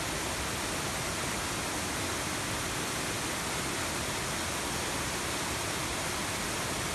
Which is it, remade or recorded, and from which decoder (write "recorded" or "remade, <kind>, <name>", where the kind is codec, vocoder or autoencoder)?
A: recorded